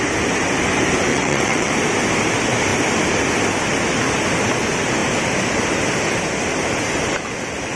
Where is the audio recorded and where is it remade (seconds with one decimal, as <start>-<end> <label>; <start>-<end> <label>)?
0.0-1.1 recorded; 1.1-1.7 remade; 1.7-7.8 recorded